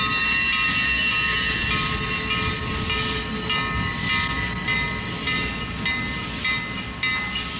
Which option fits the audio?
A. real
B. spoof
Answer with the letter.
A